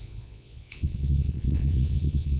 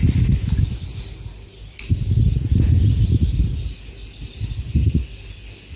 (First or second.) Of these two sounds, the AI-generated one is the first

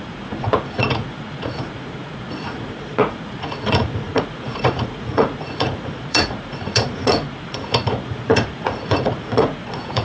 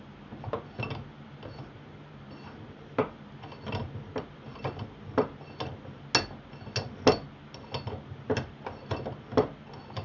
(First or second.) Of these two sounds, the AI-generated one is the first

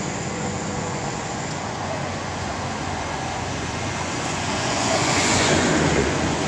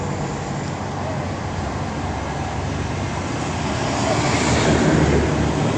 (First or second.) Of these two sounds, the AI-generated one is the first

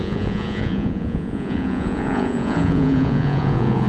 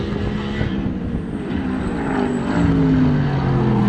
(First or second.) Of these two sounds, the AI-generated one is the first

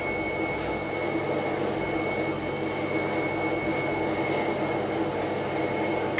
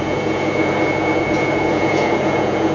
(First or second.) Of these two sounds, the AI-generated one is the second